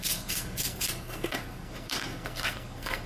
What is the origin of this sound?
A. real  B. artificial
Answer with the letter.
B